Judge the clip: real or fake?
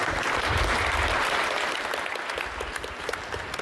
real